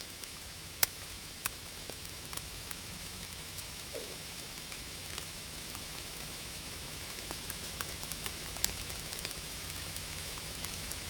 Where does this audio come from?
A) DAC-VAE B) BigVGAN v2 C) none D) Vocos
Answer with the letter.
A